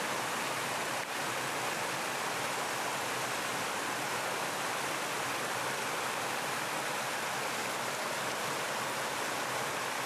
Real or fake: real